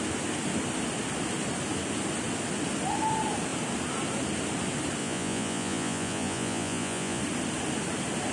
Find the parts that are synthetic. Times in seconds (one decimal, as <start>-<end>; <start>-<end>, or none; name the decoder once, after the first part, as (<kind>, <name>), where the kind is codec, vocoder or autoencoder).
5.0-7.2 (vocoder, Vocos)